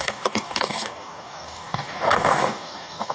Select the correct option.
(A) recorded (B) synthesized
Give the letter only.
B